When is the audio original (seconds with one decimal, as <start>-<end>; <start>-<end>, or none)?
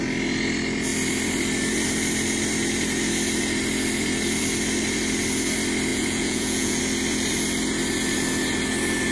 0.0-5.9; 6.8-9.1